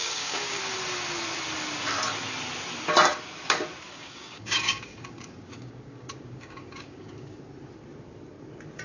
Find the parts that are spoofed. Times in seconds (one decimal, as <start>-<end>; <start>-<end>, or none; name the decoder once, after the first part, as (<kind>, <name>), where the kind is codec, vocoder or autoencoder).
0.0-0.6 (codec, DAC); 3.9-7.4